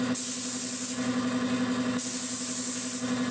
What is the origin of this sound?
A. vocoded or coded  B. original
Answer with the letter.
B